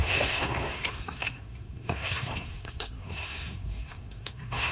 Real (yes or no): no